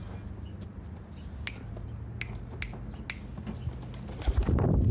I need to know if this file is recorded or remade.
recorded